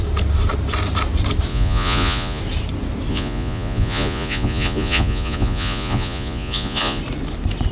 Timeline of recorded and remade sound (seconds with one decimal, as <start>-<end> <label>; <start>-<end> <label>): 0.0-1.5 recorded; 1.5-2.4 remade; 2.4-3.1 recorded; 3.1-7.0 remade; 7.0-7.7 recorded